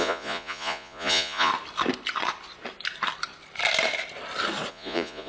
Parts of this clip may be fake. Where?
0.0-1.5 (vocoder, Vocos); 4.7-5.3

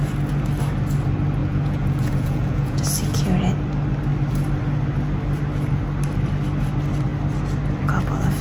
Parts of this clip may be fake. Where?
1.4-2.8 (vocoder, Vocos)

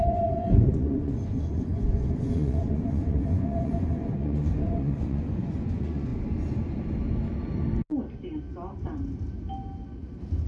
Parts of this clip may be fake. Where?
0.0-6.1 (vocoder, Vocos)

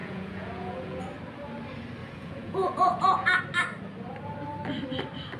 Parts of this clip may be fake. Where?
0.0-1.0 (vocoder, Vocos); 2.0-3.4

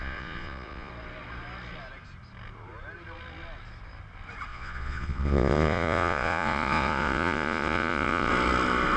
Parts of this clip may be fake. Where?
0.0-0.9 (vocoder, Vocos); 4.5-8.3

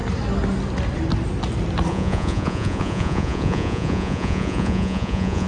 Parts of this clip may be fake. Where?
1.9-5.5 (vocoder, Vocos)